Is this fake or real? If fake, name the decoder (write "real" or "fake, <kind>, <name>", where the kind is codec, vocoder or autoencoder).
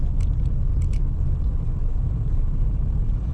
real